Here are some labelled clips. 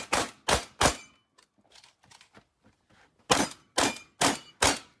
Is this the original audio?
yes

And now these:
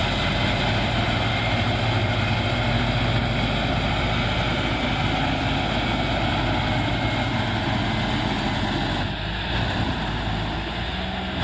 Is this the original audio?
yes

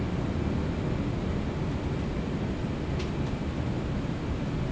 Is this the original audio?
yes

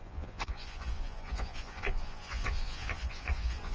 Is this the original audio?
no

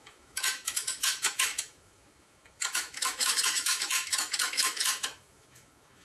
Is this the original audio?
no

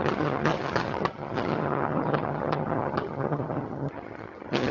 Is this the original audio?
no